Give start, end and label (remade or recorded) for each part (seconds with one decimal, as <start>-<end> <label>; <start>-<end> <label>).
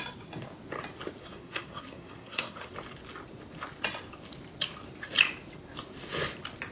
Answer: 0.0-1.2 recorded; 1.2-2.7 remade; 2.7-6.7 recorded